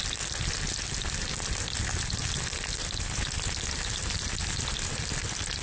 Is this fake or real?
real